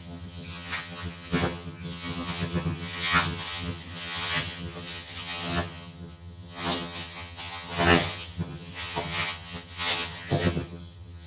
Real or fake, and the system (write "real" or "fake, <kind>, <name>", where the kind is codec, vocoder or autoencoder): fake, vocoder, HiFi-GAN